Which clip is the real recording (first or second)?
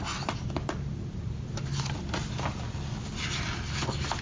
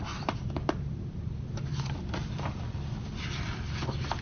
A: first